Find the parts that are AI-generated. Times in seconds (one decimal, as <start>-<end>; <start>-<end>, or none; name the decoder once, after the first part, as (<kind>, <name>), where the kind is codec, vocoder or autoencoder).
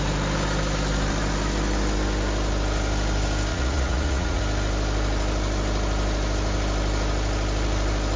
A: 3.5-4.4 (vocoder, Vocos)